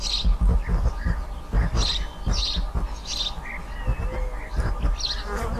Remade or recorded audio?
recorded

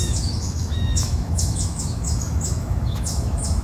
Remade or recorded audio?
remade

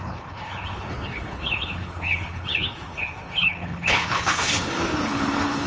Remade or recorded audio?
remade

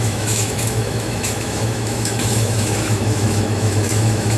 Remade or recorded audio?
remade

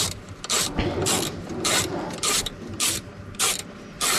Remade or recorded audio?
remade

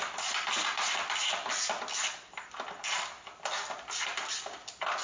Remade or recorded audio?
remade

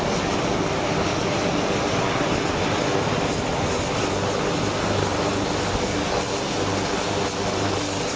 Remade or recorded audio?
recorded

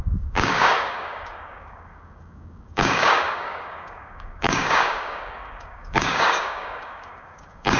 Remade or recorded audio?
remade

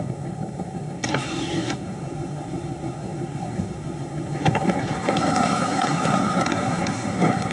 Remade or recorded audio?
remade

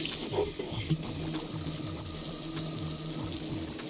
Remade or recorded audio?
recorded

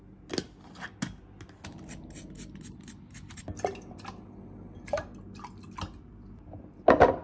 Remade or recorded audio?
recorded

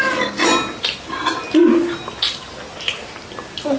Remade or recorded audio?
recorded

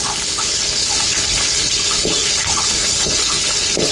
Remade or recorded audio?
remade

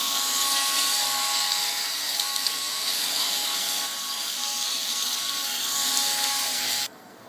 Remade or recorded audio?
remade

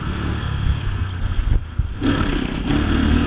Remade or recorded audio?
remade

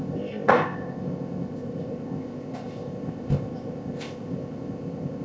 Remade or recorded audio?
remade